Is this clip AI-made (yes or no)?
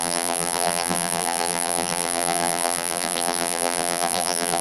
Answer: yes